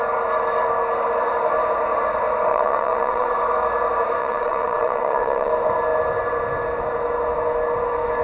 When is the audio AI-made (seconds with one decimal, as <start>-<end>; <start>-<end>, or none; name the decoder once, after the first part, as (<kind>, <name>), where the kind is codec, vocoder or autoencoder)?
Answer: 2.5-3.3 (vocoder, WaveNeXt); 4.2-5.5